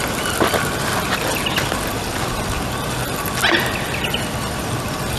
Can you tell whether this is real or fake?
real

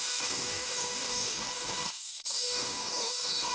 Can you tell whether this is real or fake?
fake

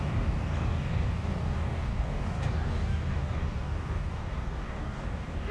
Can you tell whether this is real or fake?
fake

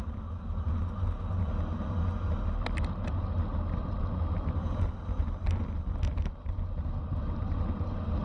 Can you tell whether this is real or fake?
real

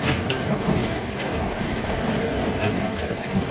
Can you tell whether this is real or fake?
fake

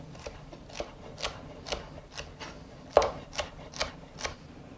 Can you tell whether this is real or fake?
real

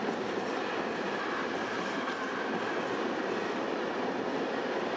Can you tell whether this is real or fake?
real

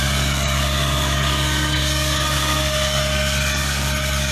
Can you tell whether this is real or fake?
fake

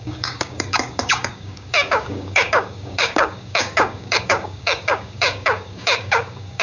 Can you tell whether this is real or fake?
fake